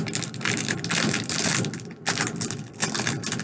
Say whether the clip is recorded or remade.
recorded